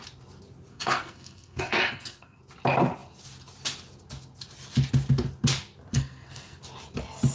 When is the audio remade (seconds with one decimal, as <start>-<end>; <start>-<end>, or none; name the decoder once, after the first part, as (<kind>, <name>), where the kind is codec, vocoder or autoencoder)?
0.7-2.4 (codec, SNAC); 5.9-6.6